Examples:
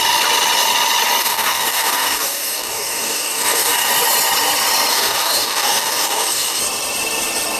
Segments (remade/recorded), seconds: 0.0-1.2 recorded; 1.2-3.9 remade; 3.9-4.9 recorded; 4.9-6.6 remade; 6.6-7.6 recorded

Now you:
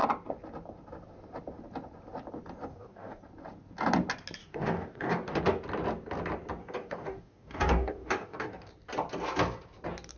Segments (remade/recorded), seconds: 0.0-2.7 recorded; 2.7-3.2 remade; 3.2-4.4 recorded; 4.4-5.4 remade; 5.4-6.6 recorded; 6.6-8.7 remade; 8.7-10.2 recorded

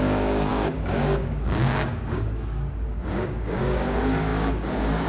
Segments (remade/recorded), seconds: 0.0-5.1 remade